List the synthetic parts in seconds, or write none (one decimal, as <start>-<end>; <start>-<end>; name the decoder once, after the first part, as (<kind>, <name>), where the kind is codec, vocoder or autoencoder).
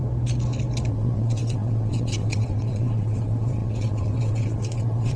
0.9-5.2 (vocoder, WaveNeXt)